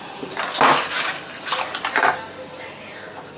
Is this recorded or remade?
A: recorded